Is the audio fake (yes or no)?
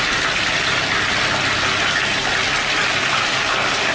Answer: no